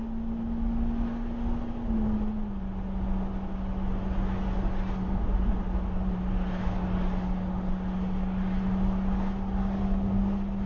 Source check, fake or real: real